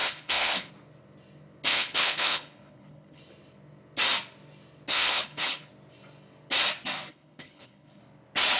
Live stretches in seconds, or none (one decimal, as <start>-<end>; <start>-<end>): 0.7-1.7; 3.2-4.9; 5.7-7.1; 8.0-8.6